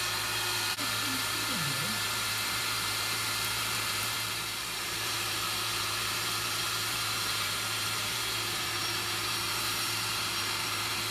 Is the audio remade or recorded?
remade